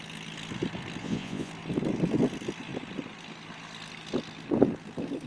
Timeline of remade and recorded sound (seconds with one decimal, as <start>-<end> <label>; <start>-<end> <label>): 0.0-1.0 recorded; 1.0-1.5 remade; 1.5-5.3 recorded